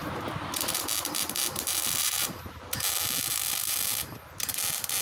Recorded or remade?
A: recorded